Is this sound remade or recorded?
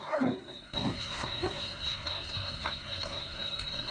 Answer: remade